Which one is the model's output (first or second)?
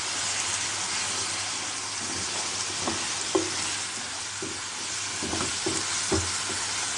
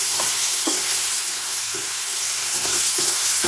second